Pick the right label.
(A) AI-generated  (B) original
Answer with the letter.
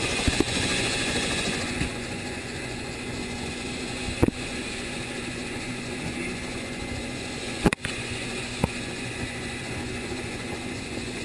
A